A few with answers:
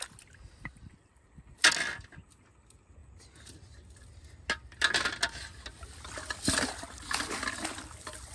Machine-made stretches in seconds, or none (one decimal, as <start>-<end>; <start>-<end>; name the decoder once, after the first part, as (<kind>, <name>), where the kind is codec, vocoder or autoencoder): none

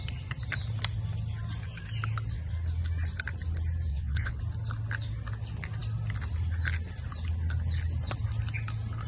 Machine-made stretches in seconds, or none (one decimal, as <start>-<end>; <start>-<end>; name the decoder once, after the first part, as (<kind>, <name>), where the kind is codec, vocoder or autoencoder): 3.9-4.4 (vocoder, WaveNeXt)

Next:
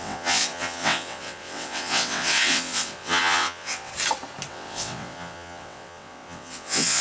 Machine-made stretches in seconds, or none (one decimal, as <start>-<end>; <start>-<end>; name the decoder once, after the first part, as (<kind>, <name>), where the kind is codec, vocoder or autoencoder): 0.0-3.9 (vocoder, WaveNeXt); 4.5-7.0

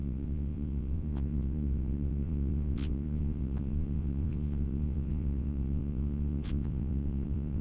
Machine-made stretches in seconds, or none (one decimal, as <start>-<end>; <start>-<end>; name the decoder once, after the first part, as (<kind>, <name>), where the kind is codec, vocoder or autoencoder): 0.0-7.6 (vocoder, WaveNeXt)